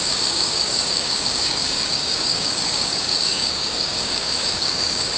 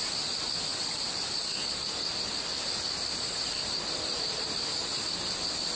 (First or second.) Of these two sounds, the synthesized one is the first